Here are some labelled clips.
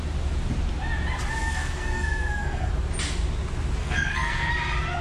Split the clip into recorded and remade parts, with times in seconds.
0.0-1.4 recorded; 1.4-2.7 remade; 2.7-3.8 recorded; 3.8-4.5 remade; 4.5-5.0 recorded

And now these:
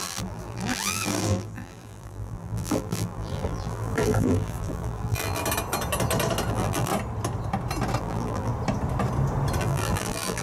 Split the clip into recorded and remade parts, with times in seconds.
0.0-5.4 remade; 5.4-6.5 recorded; 6.5-6.9 remade; 6.9-8.0 recorded; 8.0-8.5 remade; 8.5-9.6 recorded; 9.6-10.4 remade